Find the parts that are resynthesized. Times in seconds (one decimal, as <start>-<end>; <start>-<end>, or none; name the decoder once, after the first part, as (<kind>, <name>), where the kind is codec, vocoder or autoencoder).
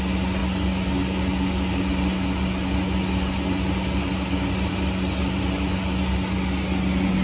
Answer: none